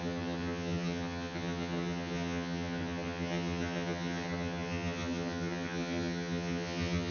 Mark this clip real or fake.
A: fake